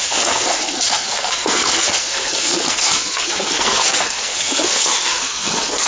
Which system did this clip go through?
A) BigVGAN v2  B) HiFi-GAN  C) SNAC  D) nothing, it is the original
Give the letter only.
C